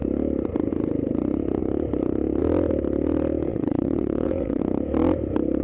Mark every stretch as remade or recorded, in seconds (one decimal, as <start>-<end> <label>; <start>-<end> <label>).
0.0-3.5 recorded; 3.5-4.6 remade; 4.6-5.6 recorded